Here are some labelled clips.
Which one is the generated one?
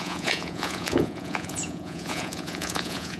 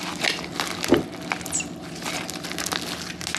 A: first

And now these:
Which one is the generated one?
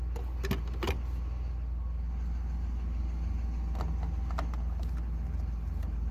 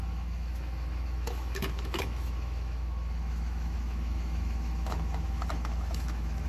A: second